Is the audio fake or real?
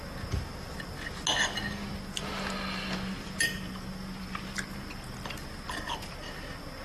real